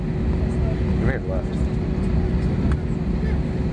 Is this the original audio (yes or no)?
yes